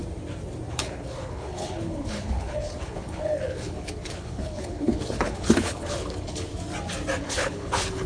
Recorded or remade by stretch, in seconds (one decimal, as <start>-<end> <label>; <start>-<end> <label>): 0.0-0.7 recorded; 0.7-6.5 remade; 6.5-7.2 recorded; 7.2-8.1 remade